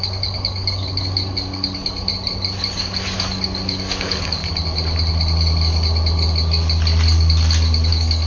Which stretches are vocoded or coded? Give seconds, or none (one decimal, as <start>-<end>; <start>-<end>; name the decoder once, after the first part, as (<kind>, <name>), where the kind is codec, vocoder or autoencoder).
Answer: 0.0-2.1 (codec, DAC); 2.8-4.4; 7.9-8.3